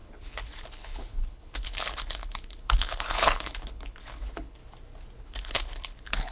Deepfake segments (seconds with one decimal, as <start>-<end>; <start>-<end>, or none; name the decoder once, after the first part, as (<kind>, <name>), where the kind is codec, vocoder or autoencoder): 0.0-4.6 (codec, HILCodec); 5.2-6.3